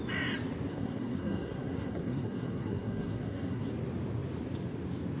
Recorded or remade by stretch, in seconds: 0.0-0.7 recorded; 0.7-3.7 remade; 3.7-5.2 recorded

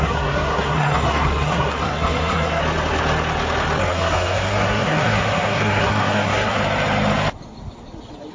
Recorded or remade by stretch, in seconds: 0.0-2.6 remade; 2.6-3.9 recorded; 3.9-6.6 remade; 6.6-8.3 recorded